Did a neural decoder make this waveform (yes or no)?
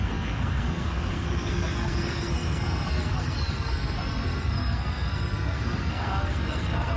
yes